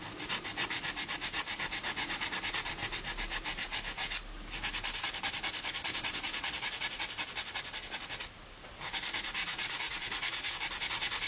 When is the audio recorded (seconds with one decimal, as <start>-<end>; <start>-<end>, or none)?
0.0-6.4; 7.0-9.4; 10.5-11.3